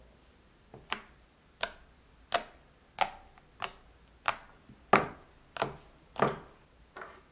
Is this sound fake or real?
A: real